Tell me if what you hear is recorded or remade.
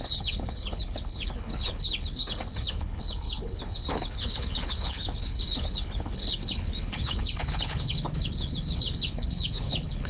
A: remade